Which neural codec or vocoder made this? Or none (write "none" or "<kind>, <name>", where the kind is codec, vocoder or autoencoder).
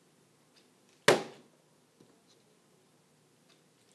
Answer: none